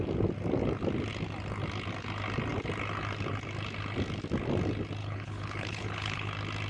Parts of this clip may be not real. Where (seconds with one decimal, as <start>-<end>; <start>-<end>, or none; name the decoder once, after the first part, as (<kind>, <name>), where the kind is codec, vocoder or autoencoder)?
5.0-6.3 (codec, HILCodec)